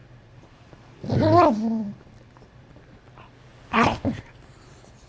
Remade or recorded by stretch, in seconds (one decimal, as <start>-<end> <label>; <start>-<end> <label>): 0.0-3.1 remade; 3.1-3.5 recorded; 3.5-5.1 remade